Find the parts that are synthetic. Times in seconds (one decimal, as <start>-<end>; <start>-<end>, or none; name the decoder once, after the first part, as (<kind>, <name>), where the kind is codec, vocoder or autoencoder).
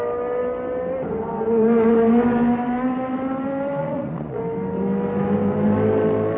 3.8-4.4 (vocoder, Vocos)